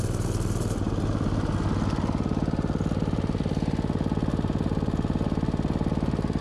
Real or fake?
real